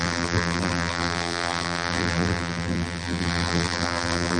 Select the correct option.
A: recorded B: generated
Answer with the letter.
B